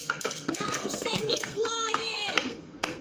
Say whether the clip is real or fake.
fake